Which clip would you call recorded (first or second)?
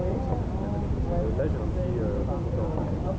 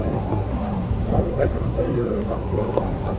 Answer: first